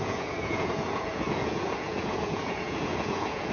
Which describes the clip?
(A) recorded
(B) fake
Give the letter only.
B